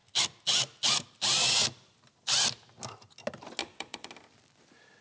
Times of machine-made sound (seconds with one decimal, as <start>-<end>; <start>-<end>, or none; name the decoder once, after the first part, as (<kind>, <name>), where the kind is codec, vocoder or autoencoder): 3.6-4.1 (vocoder, Vocos)